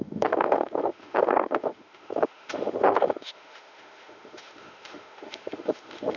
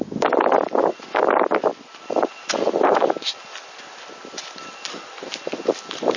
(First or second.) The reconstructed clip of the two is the first